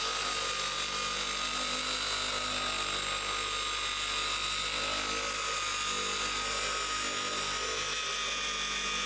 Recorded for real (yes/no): yes